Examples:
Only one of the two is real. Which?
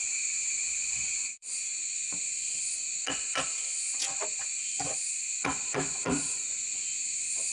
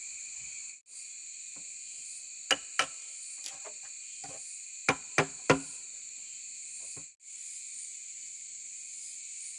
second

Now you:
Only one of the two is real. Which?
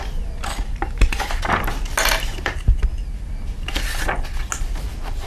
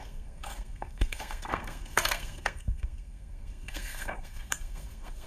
first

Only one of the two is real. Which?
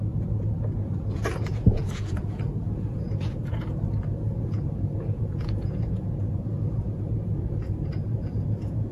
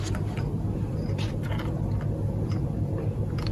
second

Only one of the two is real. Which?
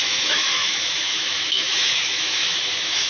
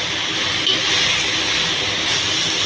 second